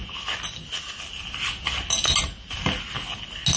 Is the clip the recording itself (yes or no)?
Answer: yes